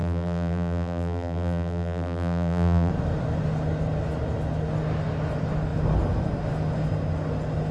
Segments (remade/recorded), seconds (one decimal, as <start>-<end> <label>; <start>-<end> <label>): 0.0-2.9 remade; 2.9-7.7 recorded